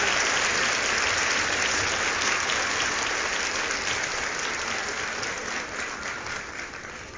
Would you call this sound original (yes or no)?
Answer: yes